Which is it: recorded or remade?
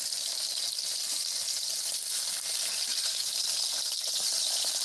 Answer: recorded